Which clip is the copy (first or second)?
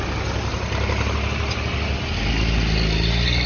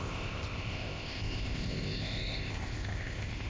second